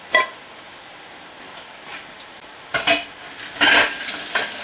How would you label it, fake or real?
real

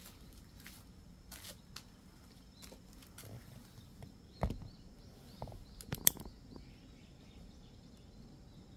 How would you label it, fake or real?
real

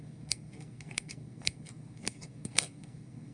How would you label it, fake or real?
fake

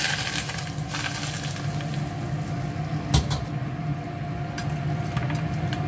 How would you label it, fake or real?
real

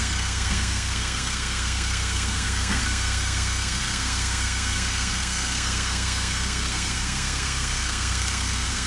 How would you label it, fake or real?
fake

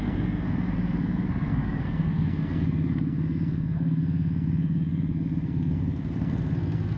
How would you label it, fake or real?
fake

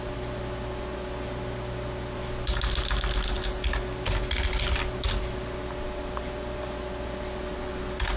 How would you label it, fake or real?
real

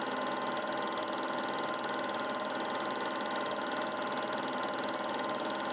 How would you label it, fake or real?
real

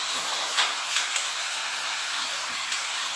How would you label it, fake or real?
fake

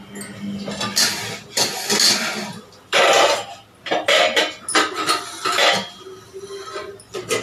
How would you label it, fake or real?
real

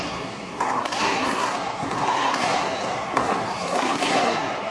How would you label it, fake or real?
fake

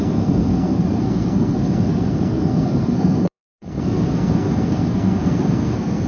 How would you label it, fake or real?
fake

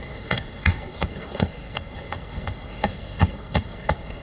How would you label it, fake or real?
fake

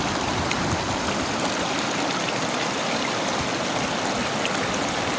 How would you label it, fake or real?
real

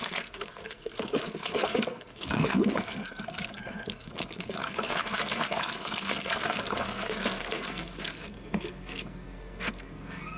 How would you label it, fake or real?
fake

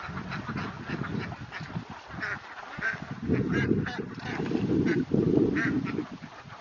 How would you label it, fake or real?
real